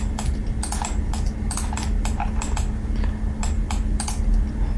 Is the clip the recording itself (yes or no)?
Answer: yes